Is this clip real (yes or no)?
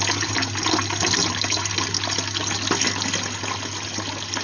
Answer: yes